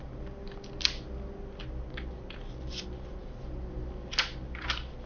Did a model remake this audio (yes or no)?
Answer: no